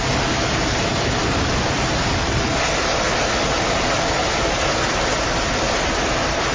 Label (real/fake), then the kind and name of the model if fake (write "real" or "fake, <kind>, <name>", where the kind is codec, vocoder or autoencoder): real